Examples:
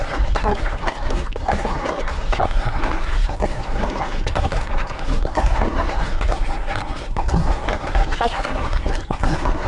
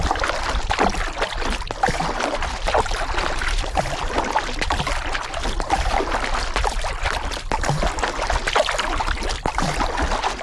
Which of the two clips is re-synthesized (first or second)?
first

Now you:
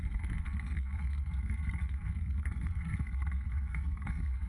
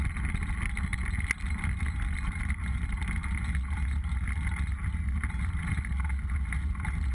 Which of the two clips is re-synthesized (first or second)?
first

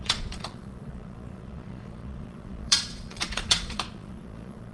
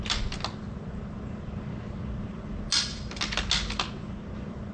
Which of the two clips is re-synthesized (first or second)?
first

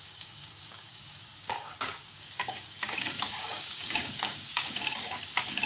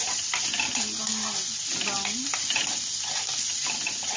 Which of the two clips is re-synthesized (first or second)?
first